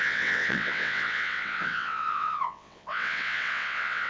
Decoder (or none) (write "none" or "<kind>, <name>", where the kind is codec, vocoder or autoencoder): vocoder, WaveNeXt